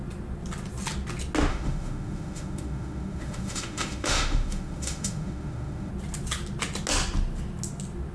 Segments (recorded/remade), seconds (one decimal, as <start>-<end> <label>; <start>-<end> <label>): 0.0-1.5 recorded; 1.5-5.9 remade; 5.9-8.1 recorded